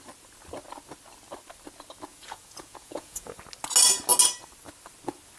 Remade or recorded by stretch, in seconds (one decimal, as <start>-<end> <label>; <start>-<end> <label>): 0.0-2.1 recorded; 2.1-3.4 remade; 3.4-5.4 recorded